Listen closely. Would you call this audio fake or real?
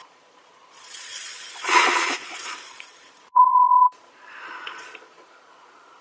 fake